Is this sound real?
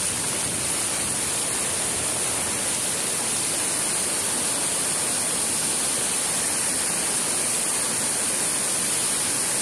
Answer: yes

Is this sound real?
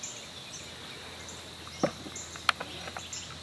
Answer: yes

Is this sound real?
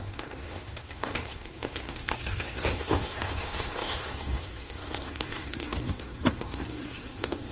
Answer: no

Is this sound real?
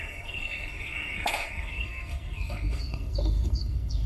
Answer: no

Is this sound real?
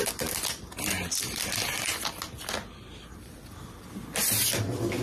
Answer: yes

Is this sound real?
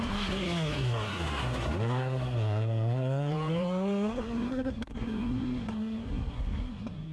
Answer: no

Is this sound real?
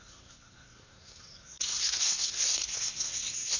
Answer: no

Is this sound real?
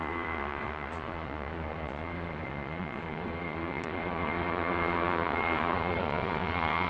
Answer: no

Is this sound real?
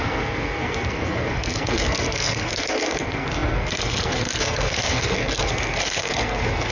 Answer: no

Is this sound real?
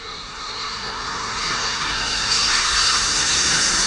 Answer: no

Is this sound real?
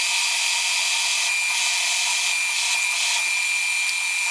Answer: yes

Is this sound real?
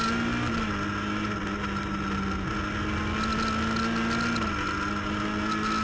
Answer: yes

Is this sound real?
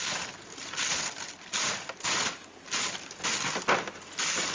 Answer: yes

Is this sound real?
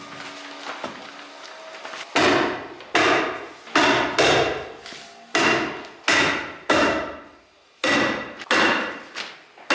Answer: yes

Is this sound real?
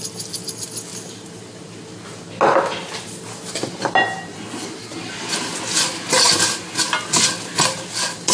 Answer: yes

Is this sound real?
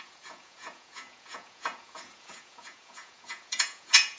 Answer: no